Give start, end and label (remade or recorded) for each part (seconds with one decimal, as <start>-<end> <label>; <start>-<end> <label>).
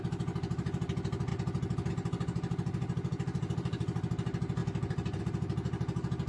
0.0-4.6 recorded; 4.6-5.2 remade; 5.2-6.3 recorded